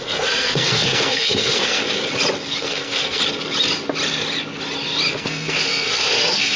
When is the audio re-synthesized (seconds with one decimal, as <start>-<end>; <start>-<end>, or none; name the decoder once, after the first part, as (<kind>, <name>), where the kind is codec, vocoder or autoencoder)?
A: 0.0-1.8 (codec, SNAC); 2.6-3.2; 5.1-6.6